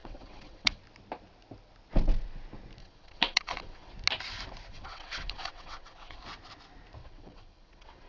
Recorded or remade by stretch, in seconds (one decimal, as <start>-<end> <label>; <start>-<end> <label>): 0.0-0.8 remade; 0.8-2.8 recorded; 2.8-3.9 remade; 3.9-4.7 recorded; 4.7-6.2 remade; 6.2-7.0 recorded; 7.0-8.1 remade